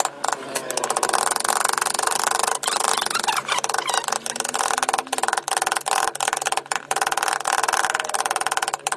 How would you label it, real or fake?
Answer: real